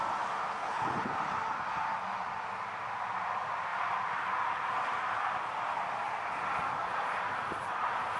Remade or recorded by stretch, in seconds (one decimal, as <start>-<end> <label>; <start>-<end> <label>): 0.0-0.6 recorded; 0.6-1.1 remade; 1.1-8.2 recorded